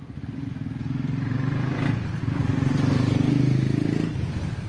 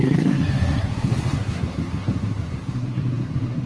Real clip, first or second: first